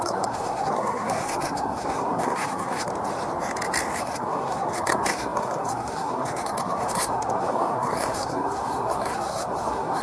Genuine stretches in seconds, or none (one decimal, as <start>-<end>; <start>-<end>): 2.9-4.0